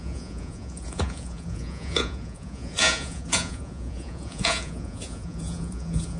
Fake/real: fake